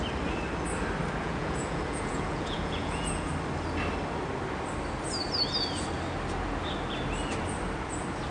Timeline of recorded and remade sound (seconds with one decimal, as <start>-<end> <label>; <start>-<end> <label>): 0.0-1.2 recorded; 1.2-3.3 remade; 3.3-8.3 recorded